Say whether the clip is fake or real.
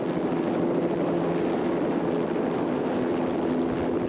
real